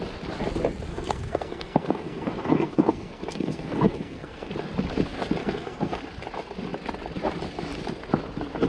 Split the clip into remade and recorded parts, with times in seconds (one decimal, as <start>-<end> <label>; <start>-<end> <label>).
0.0-0.9 recorded; 0.9-4.5 remade; 4.5-5.4 recorded; 5.4-6.0 remade; 6.0-8.7 recorded

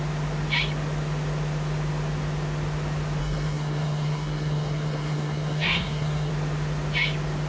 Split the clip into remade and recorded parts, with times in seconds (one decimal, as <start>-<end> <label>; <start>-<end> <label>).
0.0-3.2 recorded; 3.2-6.3 remade; 6.3-7.5 recorded

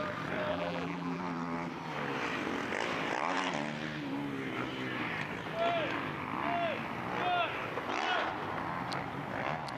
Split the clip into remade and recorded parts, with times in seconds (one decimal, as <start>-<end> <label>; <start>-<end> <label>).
0.0-0.5 recorded; 0.5-1.2 remade; 1.2-9.8 recorded

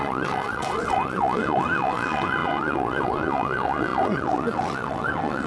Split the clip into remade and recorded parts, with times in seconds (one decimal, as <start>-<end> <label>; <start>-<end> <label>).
0.0-5.5 remade